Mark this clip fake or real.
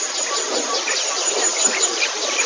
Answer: real